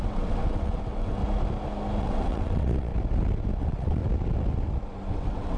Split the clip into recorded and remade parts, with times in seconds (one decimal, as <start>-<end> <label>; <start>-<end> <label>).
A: 0.0-1.2 remade; 1.2-2.0 recorded; 2.0-2.9 remade; 2.9-3.6 recorded; 3.6-4.0 remade; 4.0-5.1 recorded; 5.1-5.6 remade